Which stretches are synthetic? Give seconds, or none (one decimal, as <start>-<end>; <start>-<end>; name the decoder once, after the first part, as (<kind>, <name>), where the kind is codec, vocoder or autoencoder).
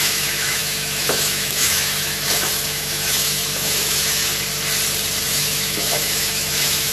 0.0-4.3 (autoencoder, DAC-VAE); 5.3-6.9